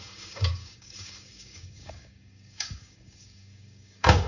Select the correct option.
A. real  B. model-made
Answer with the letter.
B